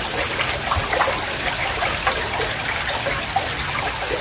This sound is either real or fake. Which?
real